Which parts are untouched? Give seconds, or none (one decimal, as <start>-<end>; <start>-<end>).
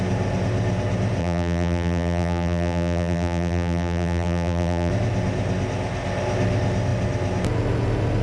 0.0-1.2; 4.9-8.2